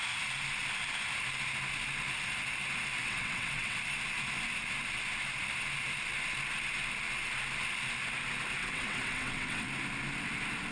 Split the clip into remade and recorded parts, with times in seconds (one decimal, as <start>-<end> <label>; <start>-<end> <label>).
0.0-3.0 recorded; 3.0-3.8 remade; 3.8-8.6 recorded; 8.6-9.7 remade; 9.7-10.7 recorded